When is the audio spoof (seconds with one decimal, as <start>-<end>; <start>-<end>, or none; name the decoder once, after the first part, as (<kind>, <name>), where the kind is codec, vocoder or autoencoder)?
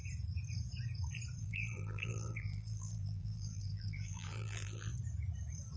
1.4-4.9 (vocoder, BigVGAN v2)